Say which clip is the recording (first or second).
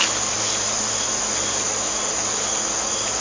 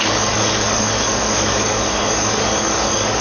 first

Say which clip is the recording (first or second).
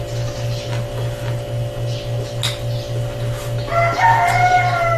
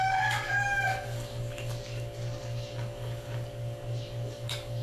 first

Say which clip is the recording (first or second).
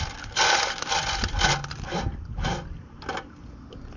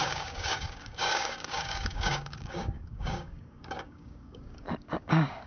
first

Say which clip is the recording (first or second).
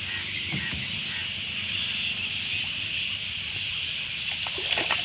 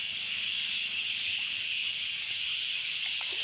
first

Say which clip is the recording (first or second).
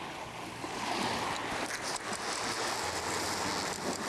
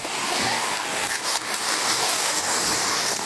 first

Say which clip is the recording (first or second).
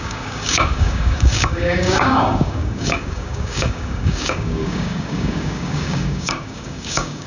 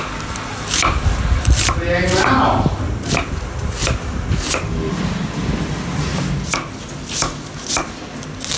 second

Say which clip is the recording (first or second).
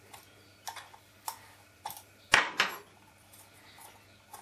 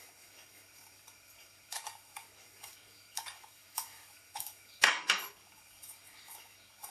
first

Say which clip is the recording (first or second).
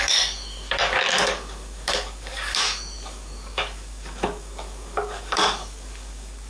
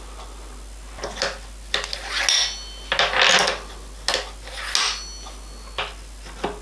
second